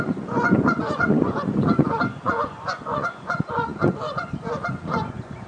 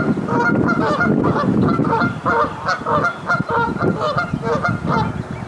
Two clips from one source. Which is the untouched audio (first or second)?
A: second